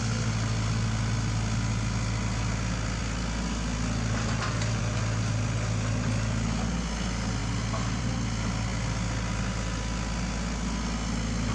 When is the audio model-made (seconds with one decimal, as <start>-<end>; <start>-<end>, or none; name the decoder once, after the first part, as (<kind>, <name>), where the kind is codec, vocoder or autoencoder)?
none